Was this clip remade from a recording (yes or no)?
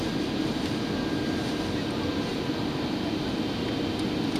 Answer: no